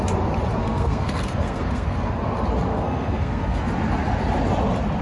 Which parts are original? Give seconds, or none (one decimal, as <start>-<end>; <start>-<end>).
0.0-0.6; 2.1-2.7; 3.7-5.0